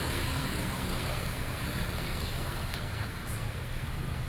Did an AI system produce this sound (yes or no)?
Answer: yes